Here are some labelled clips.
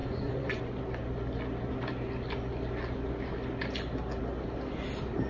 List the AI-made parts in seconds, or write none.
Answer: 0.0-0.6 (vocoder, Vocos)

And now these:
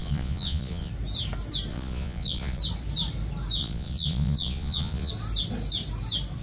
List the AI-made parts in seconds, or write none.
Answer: 0.0-0.9 (vocoder, Vocos); 1.7-2.6; 3.6-5.1

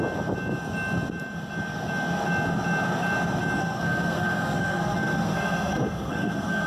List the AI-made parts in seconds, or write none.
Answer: 3.6-6.7 (codec, SNAC)

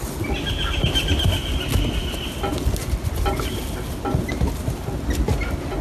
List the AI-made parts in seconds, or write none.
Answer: none